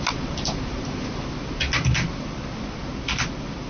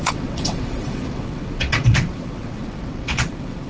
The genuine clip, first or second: first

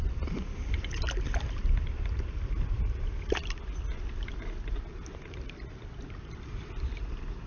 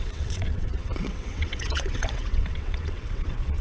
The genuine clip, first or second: first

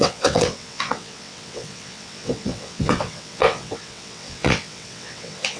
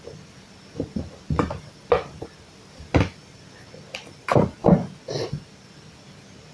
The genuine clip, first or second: second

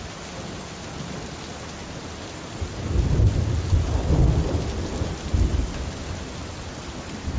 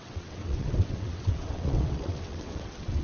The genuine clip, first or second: first